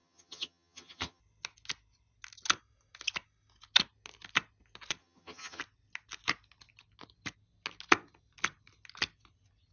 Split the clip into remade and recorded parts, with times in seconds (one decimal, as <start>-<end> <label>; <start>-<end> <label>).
0.0-1.2 remade; 1.2-5.0 recorded; 5.0-5.6 remade; 5.6-9.7 recorded